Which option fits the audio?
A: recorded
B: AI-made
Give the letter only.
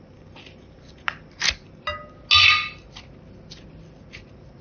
A